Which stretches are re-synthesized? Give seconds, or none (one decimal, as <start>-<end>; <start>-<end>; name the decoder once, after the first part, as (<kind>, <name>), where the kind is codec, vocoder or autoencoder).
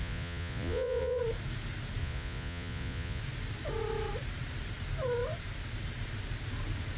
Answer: 0.0-1.2 (vocoder, Vocos); 2.0-3.2